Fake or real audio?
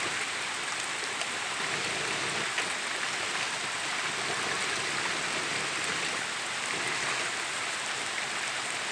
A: real